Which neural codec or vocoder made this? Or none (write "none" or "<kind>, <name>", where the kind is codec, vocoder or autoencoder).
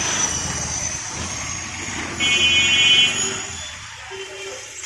none